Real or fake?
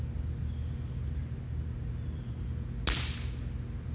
real